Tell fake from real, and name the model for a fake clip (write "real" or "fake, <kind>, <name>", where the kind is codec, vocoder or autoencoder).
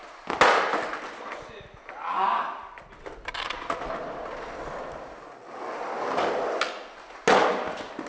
real